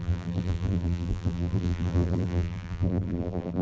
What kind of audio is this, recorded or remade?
remade